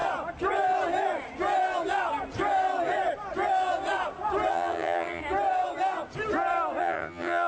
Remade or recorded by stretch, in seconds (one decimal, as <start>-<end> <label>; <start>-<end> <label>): 0.0-4.5 recorded; 4.5-5.2 remade; 5.2-6.8 recorded; 6.8-7.5 remade